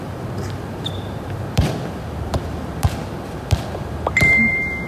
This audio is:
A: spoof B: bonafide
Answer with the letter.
A